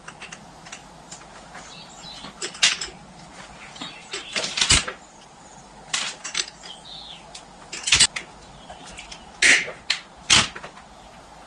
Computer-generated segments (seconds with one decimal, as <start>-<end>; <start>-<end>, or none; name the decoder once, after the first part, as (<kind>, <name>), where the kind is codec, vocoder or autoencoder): none